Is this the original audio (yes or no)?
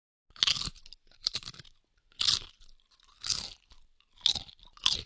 yes